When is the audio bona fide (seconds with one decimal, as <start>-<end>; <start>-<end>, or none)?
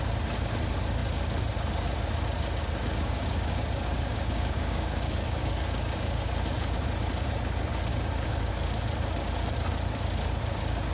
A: 0.0-2.8; 6.3-7.9; 8.5-10.9